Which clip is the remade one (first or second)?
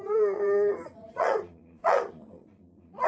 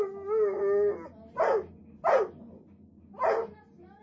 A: first